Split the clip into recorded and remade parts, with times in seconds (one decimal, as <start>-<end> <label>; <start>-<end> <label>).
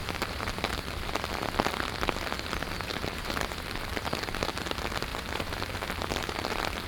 0.0-1.1 remade; 1.1-2.9 recorded; 2.9-4.0 remade; 4.0-5.1 recorded; 5.1-6.3 remade; 6.3-6.9 recorded